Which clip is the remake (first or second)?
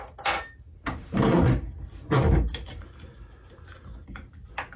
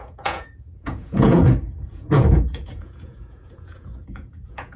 second